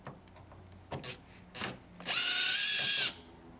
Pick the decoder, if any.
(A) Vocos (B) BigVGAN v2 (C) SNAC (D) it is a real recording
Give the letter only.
D